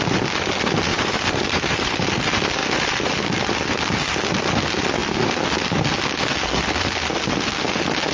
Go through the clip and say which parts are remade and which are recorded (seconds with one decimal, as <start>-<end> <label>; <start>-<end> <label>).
0.0-0.9 recorded; 0.9-1.9 remade; 1.9-8.1 recorded